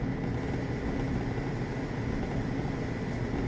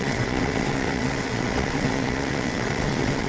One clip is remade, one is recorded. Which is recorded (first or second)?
first